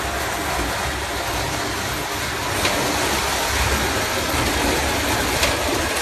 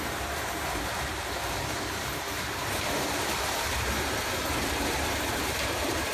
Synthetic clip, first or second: second